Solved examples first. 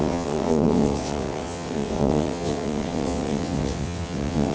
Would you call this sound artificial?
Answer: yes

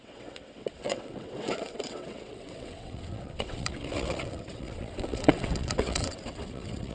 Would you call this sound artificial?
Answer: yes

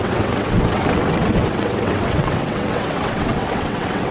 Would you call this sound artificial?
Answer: yes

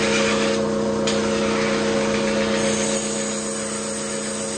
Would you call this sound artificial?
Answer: no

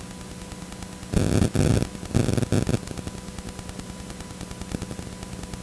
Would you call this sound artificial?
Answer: no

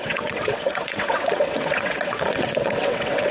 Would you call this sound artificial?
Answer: yes